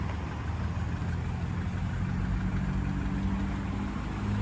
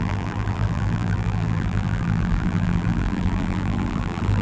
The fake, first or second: second